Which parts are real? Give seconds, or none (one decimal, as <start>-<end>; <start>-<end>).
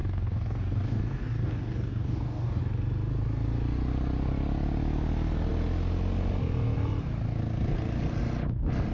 2.6-8.9